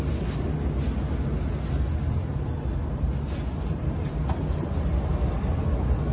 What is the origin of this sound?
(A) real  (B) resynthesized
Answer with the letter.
A